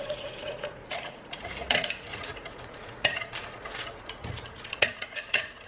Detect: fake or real fake